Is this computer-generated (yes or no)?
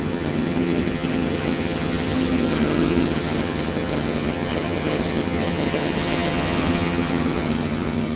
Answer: yes